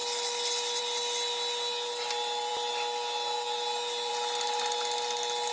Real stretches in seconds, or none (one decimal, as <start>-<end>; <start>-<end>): 0.0-5.5